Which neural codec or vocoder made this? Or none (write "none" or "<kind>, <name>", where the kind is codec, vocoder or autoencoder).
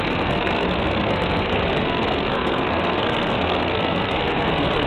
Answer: codec, SNAC